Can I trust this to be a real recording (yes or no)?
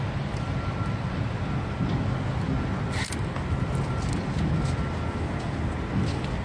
yes